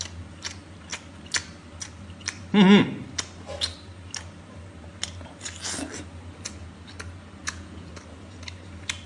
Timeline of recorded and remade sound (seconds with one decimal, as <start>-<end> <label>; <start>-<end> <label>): 0.0-7.4 recorded; 7.4-7.9 remade; 7.9-9.1 recorded